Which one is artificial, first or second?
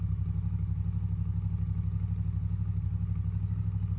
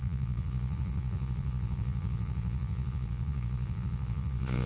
second